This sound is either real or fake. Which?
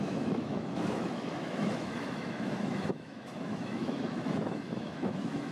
fake